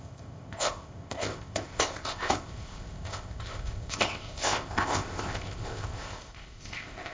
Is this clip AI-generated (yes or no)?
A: yes